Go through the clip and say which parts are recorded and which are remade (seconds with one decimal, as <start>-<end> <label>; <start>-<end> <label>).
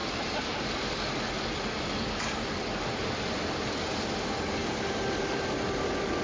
0.0-6.2 recorded